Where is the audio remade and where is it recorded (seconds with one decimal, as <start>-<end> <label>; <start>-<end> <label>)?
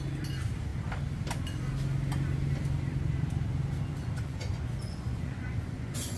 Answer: 0.0-4.0 recorded; 4.0-6.2 remade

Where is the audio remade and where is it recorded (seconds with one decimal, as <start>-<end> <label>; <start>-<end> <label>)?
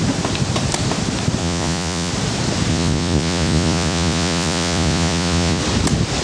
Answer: 0.0-1.4 recorded; 1.4-2.1 remade; 2.1-2.7 recorded; 2.7-5.6 remade; 5.6-6.2 recorded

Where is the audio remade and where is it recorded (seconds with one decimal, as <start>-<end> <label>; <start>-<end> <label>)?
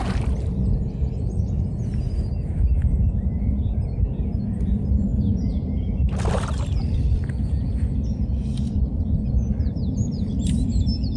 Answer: 0.0-11.2 recorded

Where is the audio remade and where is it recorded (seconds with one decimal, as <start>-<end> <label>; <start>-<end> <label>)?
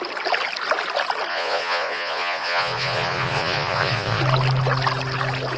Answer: 0.0-1.3 recorded; 1.3-4.2 remade; 4.2-5.6 recorded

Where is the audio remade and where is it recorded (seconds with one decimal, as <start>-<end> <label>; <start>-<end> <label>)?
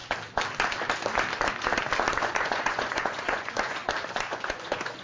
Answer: 0.0-2.2 recorded; 2.2-3.8 remade; 3.8-4.3 recorded; 4.3-5.0 remade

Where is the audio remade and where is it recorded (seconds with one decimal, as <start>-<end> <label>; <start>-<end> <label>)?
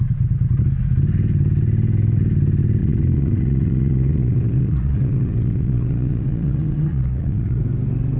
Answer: 0.0-2.8 recorded; 2.8-7.6 remade; 7.6-8.2 recorded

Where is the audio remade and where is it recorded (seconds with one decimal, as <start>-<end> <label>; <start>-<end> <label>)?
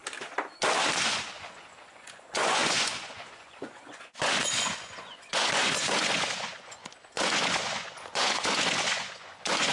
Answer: 0.0-1.0 recorded; 1.0-9.7 remade